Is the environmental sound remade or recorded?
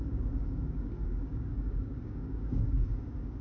remade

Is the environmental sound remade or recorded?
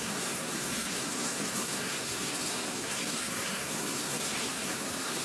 remade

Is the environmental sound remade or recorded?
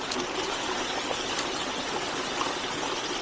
recorded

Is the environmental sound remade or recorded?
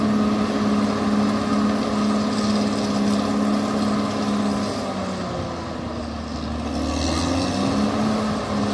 recorded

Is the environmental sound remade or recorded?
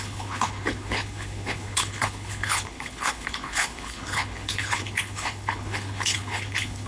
remade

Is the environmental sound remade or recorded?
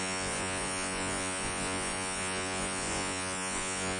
remade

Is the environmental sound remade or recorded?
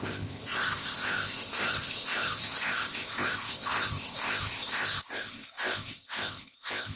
remade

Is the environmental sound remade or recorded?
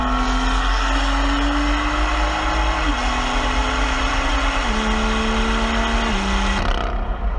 recorded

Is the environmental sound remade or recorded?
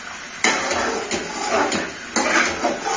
recorded